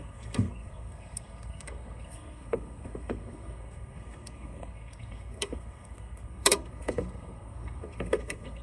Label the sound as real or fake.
fake